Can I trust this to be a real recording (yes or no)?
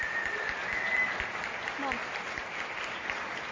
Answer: yes